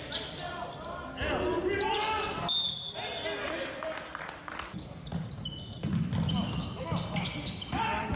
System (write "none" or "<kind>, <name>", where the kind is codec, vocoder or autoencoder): none